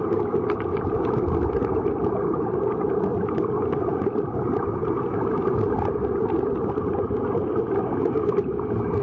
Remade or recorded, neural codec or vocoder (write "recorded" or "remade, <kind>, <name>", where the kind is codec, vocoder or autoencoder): recorded